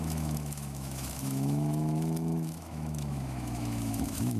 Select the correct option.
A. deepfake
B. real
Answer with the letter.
A